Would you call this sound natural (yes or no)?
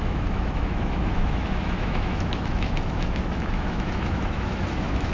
no